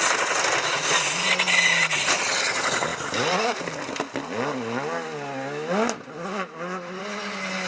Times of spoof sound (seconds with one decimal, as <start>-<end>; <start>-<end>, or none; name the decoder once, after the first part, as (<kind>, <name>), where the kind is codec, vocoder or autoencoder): none